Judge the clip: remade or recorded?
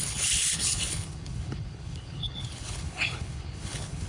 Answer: remade